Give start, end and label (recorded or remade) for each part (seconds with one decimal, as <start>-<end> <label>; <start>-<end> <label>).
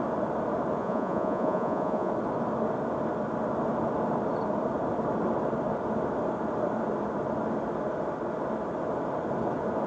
0.0-0.8 recorded; 0.8-2.1 remade; 2.1-9.9 recorded